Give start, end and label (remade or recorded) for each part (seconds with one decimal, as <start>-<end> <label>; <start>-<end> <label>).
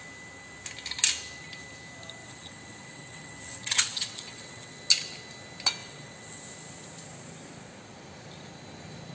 0.0-2.2 recorded; 2.2-4.8 remade; 4.8-5.8 recorded; 5.8-6.4 remade; 6.4-9.1 recorded